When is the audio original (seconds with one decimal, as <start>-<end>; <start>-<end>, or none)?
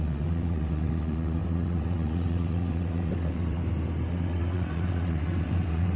3.6-4.1